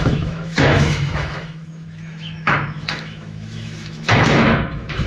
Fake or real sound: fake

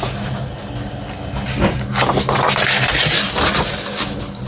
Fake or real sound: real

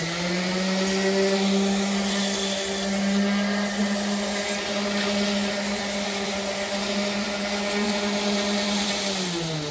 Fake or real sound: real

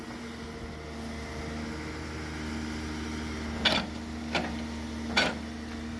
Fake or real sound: real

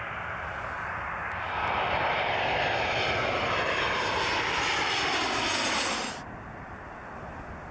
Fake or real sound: real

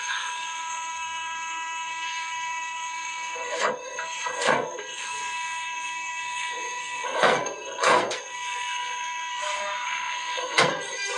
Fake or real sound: fake